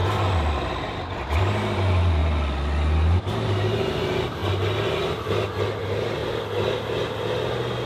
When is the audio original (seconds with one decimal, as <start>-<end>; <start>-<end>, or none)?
2.2-3.2; 4.4-5.8; 6.2-7.9